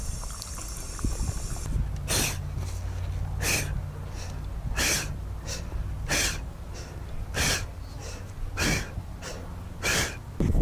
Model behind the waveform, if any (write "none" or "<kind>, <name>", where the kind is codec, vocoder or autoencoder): none